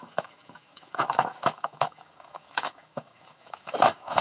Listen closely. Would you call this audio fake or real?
fake